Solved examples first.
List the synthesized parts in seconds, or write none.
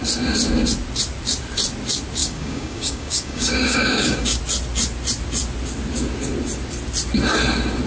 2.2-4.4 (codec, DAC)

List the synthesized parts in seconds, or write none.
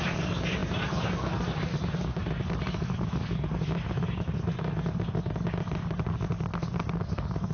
none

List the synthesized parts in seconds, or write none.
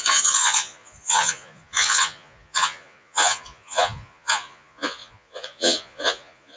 0.0-6.6 (vocoder, Vocos)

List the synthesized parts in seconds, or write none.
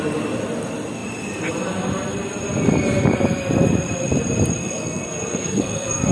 4.6-6.1 (codec, SNAC)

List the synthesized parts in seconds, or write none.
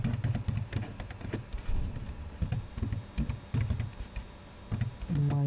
1.5-2.7 (vocoder, BigVGAN v2)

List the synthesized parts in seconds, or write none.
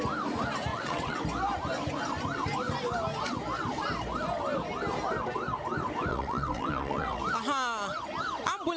0.7-1.2 (vocoder, WaveNeXt); 6.1-7.2